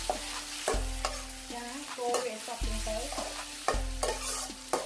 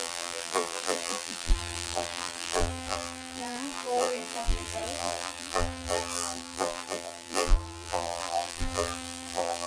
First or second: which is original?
first